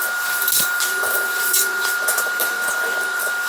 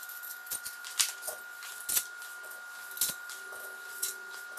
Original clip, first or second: second